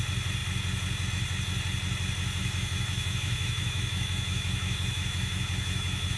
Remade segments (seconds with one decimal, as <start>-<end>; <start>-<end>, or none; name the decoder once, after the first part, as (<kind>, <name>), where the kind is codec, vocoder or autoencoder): 2.4-6.2 (autoencoder, DAC-VAE)